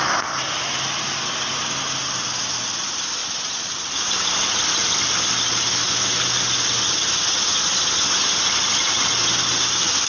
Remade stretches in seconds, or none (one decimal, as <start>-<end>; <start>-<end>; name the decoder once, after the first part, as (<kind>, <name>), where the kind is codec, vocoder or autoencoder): 3.2-3.7 (vocoder, Vocos)